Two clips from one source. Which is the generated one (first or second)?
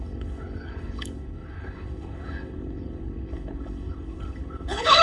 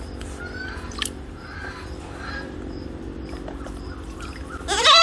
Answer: first